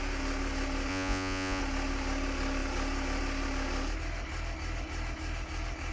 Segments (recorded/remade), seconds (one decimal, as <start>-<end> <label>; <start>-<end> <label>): 0.0-0.9 recorded; 0.9-1.6 remade; 1.6-5.9 recorded